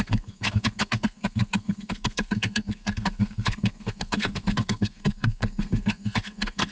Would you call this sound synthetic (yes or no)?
yes